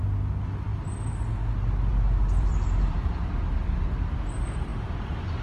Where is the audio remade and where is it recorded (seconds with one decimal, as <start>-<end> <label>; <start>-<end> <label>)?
0.0-1.9 recorded; 1.9-3.4 remade; 3.4-5.4 recorded

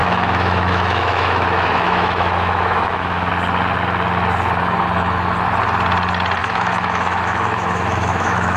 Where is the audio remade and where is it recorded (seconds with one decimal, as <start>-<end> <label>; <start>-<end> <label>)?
0.0-3.3 remade; 3.3-6.4 recorded; 6.4-8.6 remade